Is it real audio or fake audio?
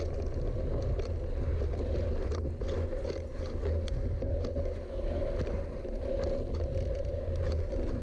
real